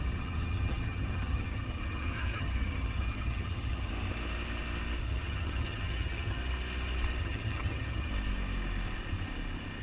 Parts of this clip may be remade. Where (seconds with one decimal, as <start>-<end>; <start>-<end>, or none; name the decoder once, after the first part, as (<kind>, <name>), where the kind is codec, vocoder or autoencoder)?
0.0-3.9 (vocoder, HiFi-GAN); 5.0-6.4; 7.2-8.1